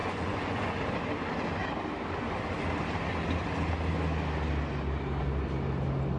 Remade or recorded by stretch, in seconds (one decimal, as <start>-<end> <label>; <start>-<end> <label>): 0.0-0.8 remade; 0.8-6.2 recorded